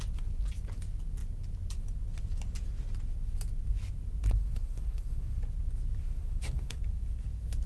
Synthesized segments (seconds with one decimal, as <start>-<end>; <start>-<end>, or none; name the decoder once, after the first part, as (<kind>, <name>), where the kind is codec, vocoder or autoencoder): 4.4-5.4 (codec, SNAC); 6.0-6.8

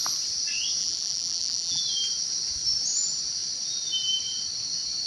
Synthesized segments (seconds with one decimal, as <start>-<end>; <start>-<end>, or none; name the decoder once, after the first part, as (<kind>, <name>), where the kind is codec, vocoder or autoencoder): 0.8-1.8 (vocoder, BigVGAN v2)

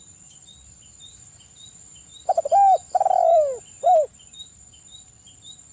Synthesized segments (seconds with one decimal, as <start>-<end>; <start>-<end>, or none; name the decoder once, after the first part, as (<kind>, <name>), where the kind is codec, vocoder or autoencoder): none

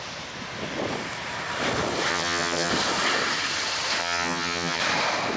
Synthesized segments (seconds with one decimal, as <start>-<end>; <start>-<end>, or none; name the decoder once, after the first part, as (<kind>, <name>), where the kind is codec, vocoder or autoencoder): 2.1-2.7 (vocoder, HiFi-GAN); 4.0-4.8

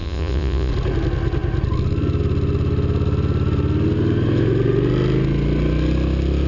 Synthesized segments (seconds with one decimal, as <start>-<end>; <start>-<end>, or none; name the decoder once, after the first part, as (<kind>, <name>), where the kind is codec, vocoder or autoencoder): 0.0-0.7 (vocoder, Vocos)

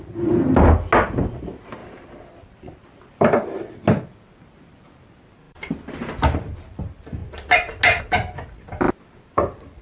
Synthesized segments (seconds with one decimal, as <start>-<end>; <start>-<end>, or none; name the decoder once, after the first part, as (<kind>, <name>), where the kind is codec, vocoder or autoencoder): none